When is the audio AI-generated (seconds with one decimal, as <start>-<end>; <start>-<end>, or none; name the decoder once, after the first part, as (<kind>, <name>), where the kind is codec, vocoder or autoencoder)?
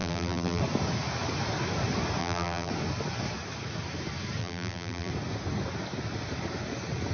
0.0-0.6 (vocoder, BigVGAN v2); 2.2-2.7; 4.4-5.1